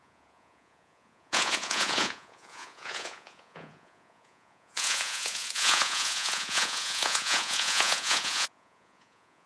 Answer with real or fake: fake